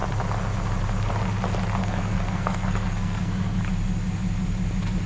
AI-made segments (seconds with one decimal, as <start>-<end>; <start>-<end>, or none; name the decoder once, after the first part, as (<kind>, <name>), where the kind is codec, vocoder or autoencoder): 1.8-3.6 (codec, SNAC)